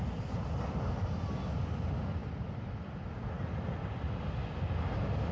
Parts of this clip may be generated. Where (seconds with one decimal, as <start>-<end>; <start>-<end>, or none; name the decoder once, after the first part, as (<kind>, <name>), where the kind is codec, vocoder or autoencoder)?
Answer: none